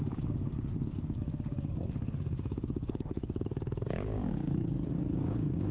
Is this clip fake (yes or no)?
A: yes